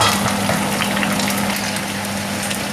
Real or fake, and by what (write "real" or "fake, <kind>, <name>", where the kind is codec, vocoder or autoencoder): real